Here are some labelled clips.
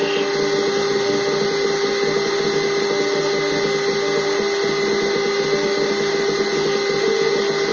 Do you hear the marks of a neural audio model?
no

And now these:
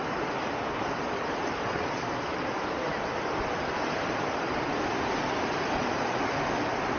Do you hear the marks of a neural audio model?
no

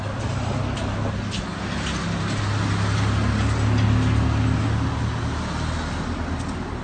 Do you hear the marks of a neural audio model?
no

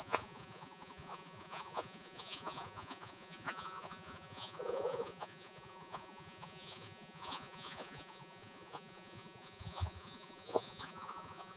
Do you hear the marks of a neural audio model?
yes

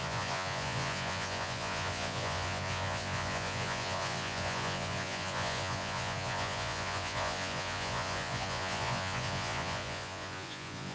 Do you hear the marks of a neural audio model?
yes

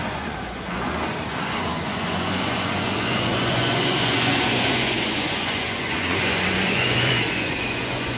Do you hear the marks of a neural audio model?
yes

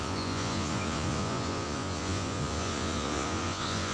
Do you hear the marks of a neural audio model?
yes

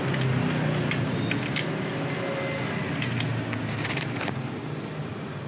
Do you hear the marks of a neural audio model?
no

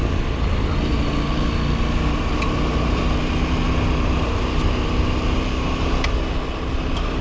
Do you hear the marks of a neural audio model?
no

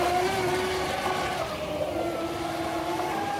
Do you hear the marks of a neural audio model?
no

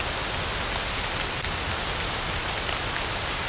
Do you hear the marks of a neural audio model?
no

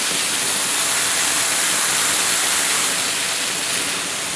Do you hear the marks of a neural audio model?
no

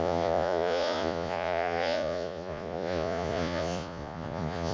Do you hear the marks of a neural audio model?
yes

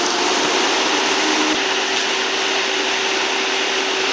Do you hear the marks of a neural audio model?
no